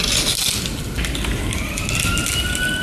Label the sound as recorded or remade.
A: recorded